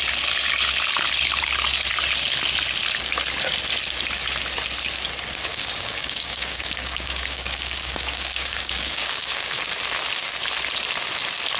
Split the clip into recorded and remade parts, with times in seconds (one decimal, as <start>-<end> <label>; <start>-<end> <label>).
0.0-5.5 recorded; 5.5-9.7 remade; 9.7-11.6 recorded